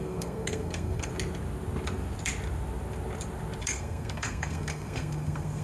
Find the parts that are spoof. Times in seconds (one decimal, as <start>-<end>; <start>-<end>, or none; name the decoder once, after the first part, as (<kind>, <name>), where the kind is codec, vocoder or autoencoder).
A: 0.0-1.1 (codec, SNAC); 3.6-5.6